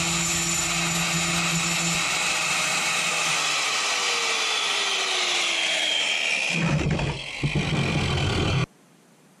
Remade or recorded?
recorded